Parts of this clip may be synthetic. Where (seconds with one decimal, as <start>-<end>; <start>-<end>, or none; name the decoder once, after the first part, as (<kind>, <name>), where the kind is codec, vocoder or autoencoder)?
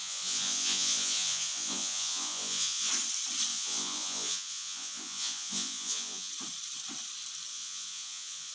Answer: 0.0-2.9 (vocoder, Vocos); 3.5-6.3; 7.5-8.5